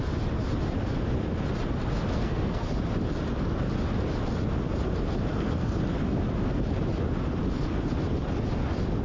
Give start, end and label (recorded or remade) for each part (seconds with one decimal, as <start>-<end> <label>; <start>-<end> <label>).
0.0-2.1 recorded; 2.1-2.7 remade; 2.7-5.3 recorded; 5.3-5.8 remade; 5.8-9.0 recorded